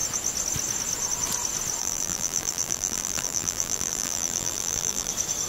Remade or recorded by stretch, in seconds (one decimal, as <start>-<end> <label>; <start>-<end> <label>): 0.0-1.8 recorded; 1.8-5.1 remade; 5.1-5.5 recorded